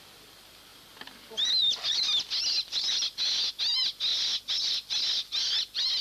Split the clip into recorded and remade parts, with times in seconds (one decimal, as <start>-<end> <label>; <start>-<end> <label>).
0.0-6.0 recorded

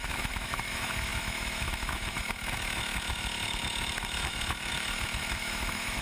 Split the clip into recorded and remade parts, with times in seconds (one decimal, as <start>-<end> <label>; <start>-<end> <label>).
0.0-6.0 remade

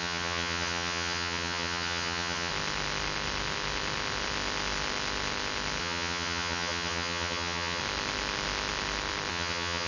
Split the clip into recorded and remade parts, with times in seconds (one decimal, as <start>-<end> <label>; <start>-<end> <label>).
0.0-2.5 remade; 2.5-5.8 recorded; 5.8-7.8 remade; 7.8-9.3 recorded; 9.3-9.9 remade

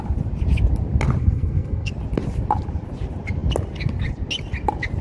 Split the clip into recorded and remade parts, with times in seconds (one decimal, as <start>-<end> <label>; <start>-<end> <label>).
0.0-1.2 recorded; 1.2-1.9 remade; 1.9-5.0 recorded

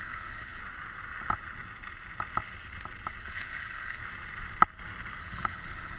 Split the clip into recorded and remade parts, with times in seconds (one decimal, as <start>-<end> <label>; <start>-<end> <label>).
0.0-0.6 remade; 0.6-3.2 recorded; 3.2-4.0 remade; 4.0-5.2 recorded; 5.2-6.0 remade

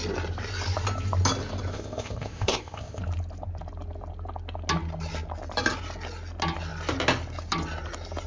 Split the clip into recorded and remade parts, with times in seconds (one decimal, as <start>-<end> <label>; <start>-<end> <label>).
0.0-1.7 recorded; 1.7-3.0 remade; 3.0-8.3 recorded

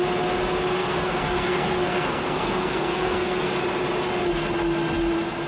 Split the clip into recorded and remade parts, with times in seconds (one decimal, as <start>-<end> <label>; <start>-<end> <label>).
0.0-0.8 recorded; 0.8-3.5 remade; 3.5-5.5 recorded